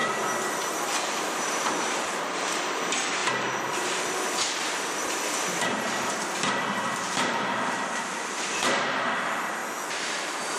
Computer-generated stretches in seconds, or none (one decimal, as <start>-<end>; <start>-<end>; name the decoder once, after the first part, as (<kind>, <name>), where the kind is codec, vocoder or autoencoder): 0.5-9.6 (vocoder, BigVGAN v2); 10.1-10.6